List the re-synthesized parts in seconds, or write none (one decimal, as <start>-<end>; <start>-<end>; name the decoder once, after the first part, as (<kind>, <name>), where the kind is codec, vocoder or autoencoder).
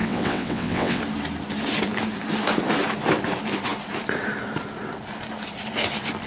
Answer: 0.0-1.0 (vocoder, WaveNeXt)